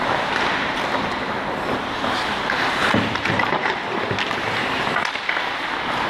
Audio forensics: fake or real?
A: real